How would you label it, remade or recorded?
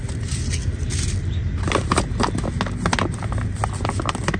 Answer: recorded